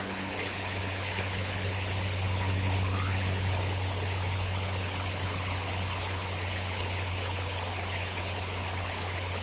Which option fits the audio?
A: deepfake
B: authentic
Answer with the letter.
A